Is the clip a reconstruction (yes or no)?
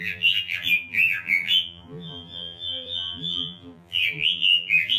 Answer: yes